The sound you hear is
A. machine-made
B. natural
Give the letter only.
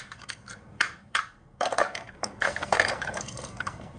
A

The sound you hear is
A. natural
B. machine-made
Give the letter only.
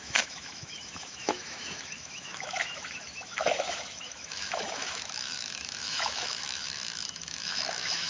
B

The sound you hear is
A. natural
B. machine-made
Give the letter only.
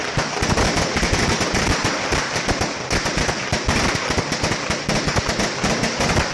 A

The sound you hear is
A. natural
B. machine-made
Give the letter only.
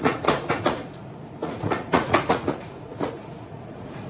B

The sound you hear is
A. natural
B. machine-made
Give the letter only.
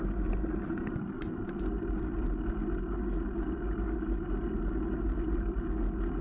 A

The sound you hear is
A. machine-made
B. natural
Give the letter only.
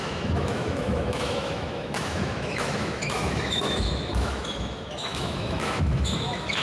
A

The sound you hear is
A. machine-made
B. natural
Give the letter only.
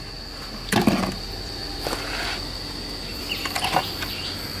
B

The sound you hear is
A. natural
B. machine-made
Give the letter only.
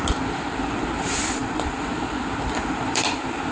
B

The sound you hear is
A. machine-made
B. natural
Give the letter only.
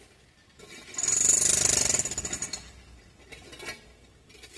B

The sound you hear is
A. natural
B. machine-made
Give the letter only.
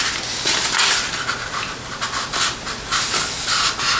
A